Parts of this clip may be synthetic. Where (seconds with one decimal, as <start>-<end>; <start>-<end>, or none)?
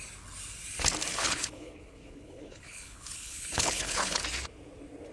1.1-4.2